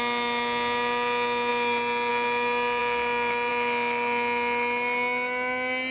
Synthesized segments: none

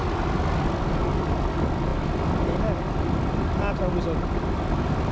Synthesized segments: none

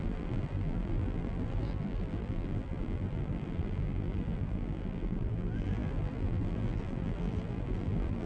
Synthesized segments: 0.0-8.3 (vocoder, BigVGAN v2)

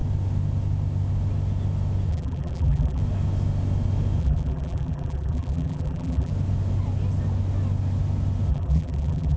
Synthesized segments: 2.1-3.0 (vocoder, BigVGAN v2); 4.2-6.3; 8.5-9.4

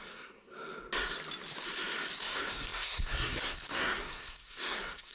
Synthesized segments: 0.0-0.5 (codec, SNAC); 2.2-5.1

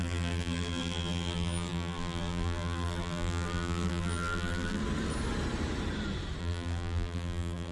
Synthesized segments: 0.0-4.8 (vocoder, BigVGAN v2); 6.4-7.7

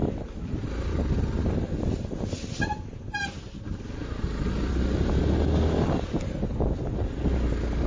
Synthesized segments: none